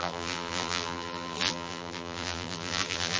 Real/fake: fake